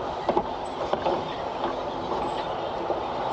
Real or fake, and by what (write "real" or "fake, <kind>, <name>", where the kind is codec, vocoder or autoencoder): real